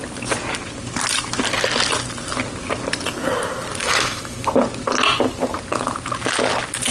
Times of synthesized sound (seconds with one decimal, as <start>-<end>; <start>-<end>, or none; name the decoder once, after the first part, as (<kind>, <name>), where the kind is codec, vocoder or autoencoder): 3.8-4.5 (autoencoder, DAC-VAE)